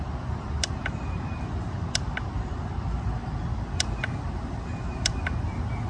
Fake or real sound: real